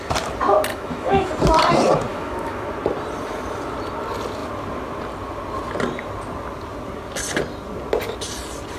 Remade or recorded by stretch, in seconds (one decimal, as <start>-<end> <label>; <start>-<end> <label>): 0.0-0.7 recorded; 0.7-1.3 remade; 1.3-2.1 recorded; 2.1-2.7 remade; 2.7-8.8 recorded